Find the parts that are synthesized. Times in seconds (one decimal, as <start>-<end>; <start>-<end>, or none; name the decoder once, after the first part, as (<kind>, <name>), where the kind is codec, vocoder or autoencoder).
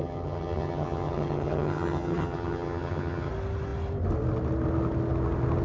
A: 0.0-3.3 (vocoder, HiFi-GAN)